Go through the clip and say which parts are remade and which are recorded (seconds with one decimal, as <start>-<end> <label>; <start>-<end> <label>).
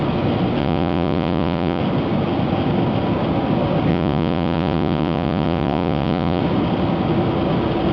0.0-0.6 recorded; 0.6-1.8 remade; 1.8-3.9 recorded; 3.9-6.4 remade; 6.4-7.9 recorded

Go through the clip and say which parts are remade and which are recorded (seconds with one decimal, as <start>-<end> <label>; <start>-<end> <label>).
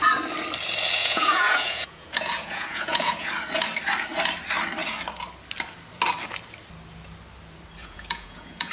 0.0-1.0 recorded; 1.0-3.3 remade; 3.3-7.8 recorded; 7.8-8.7 remade